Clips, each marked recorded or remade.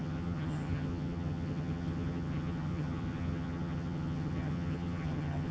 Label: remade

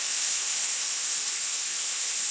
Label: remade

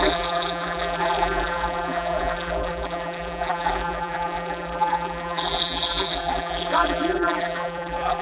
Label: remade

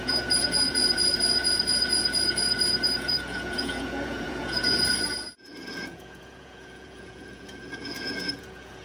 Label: remade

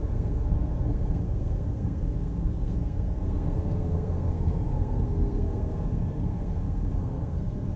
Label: remade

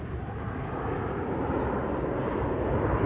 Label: recorded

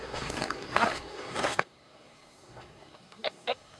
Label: remade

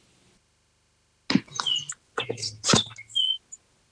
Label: recorded